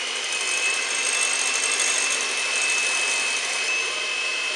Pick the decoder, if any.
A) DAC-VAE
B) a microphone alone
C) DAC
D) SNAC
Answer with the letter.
B